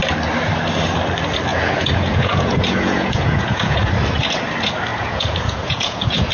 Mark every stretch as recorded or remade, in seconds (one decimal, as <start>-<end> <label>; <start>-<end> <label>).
0.0-1.5 recorded; 1.5-3.9 remade; 3.9-4.9 recorded; 4.9-6.3 remade